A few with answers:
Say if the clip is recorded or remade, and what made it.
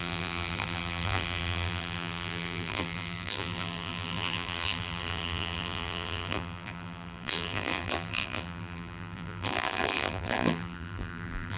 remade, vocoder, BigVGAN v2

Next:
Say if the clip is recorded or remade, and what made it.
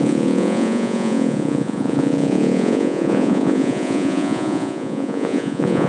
remade, vocoder, Vocos